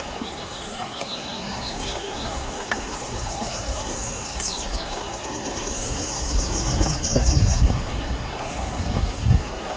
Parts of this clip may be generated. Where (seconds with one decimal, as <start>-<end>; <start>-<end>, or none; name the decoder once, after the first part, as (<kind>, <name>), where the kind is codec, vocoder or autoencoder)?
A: 0.0-9.8 (codec, SNAC)